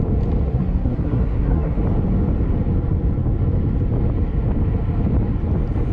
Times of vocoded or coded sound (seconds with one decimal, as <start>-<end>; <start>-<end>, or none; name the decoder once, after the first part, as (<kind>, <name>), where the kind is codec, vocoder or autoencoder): 0.4-1.8 (codec, SNAC)